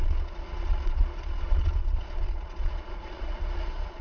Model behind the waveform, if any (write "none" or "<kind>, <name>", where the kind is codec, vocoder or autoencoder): vocoder, Vocos